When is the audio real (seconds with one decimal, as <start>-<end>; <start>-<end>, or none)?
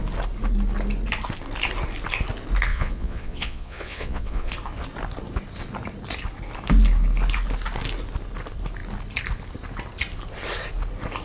0.0-2.7; 4.5-11.2